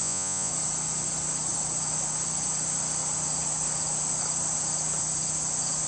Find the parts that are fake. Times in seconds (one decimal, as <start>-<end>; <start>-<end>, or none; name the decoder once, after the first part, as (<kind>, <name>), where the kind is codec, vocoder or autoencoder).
0.0-0.5 (vocoder, Vocos)